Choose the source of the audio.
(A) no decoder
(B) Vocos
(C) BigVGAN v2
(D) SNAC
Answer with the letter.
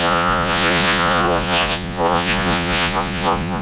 B